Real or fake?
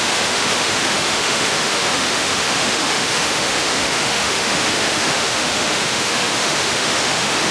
fake